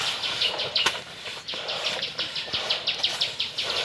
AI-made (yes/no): yes